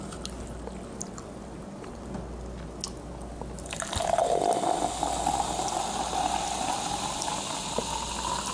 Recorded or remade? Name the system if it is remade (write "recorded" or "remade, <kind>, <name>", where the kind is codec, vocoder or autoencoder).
recorded